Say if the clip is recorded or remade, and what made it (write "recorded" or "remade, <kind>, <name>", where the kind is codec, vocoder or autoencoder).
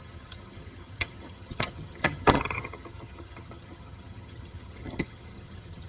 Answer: remade, vocoder, HiFi-GAN